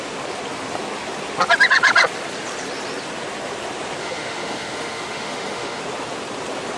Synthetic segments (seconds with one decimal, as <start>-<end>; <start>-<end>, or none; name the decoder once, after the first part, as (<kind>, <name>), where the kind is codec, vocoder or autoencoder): 4.0-5.8 (autoencoder, DAC-VAE)